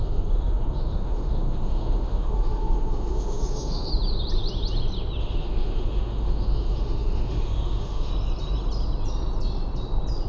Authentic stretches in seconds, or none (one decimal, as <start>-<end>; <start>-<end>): 3.9-5.2; 8.1-10.3